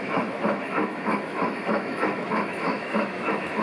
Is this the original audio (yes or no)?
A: no